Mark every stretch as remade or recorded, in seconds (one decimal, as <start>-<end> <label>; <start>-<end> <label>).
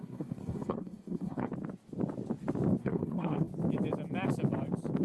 0.0-1.5 remade; 1.5-2.8 recorded; 2.8-3.5 remade; 3.5-5.0 recorded